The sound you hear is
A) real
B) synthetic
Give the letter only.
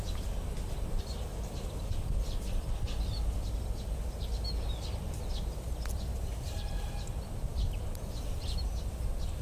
A